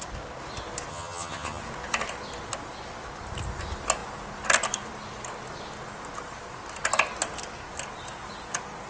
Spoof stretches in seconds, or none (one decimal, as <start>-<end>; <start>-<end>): 0.9-1.6